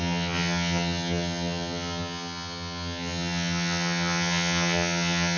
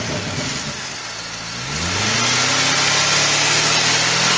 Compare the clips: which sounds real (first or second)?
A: second